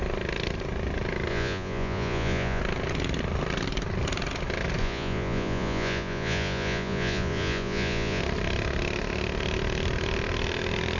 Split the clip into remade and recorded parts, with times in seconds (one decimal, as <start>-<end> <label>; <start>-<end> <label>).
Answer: 0.0-1.3 recorded; 1.3-2.6 remade; 2.6-4.8 recorded; 4.8-8.2 remade; 8.2-11.0 recorded